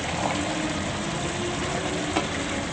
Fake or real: real